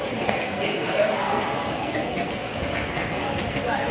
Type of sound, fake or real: fake